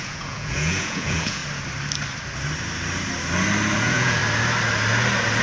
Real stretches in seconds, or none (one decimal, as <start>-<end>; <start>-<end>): 1.4-3.8; 4.2-5.4